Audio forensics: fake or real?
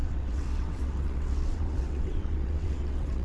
fake